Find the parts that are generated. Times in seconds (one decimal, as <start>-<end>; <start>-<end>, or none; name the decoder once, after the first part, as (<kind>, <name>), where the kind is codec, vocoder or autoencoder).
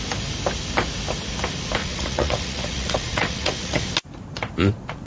1.8-3.9 (vocoder, Vocos)